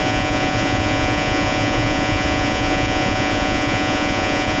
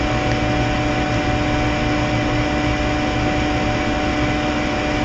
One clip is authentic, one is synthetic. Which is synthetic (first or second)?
first